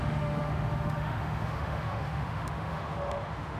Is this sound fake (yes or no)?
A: yes